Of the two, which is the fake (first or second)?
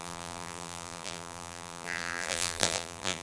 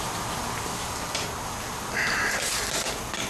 first